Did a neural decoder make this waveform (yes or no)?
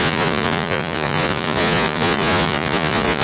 yes